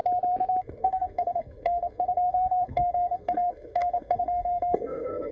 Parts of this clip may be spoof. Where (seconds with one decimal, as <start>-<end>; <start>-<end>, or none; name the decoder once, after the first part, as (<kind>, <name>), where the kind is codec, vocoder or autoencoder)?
0.6-5.3 (codec, SNAC)